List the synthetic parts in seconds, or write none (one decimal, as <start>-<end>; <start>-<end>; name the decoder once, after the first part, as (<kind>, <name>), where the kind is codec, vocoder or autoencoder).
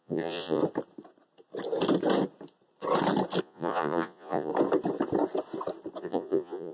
0.0-0.6 (vocoder, Vocos); 3.4-4.5; 6.0-6.7